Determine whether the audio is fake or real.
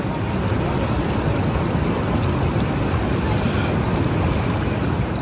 real